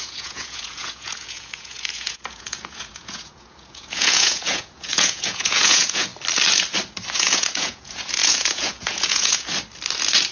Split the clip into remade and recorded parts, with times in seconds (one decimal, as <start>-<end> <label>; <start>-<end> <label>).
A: 0.0-6.1 remade; 6.1-7.1 recorded; 7.1-9.5 remade; 9.5-10.3 recorded